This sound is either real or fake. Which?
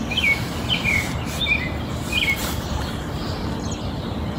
real